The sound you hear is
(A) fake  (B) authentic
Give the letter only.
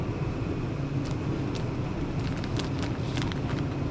B